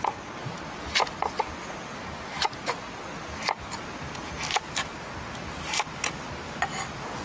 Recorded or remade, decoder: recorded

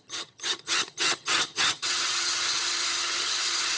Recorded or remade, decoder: remade, vocoder, HiFi-GAN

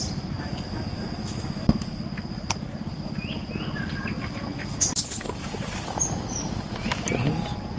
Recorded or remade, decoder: recorded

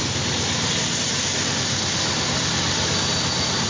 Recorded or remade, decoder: recorded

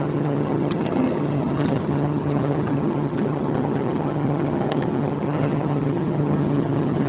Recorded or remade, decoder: remade, vocoder, HiFi-GAN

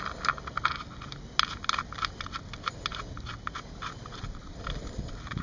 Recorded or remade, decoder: recorded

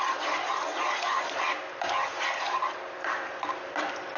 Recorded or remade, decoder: recorded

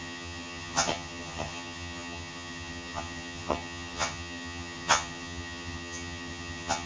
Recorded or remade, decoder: remade, vocoder, HiFi-GAN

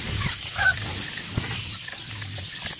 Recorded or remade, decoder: recorded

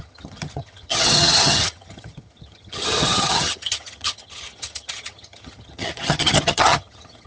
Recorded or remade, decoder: remade, vocoder, HiFi-GAN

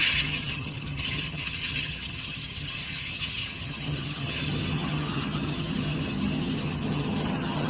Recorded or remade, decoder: remade, vocoder, HiFi-GAN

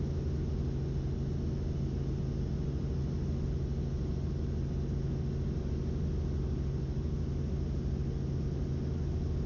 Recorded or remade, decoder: recorded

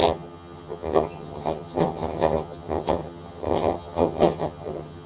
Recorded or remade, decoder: remade, vocoder, HiFi-GAN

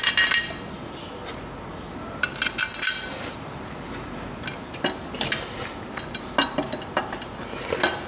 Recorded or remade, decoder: recorded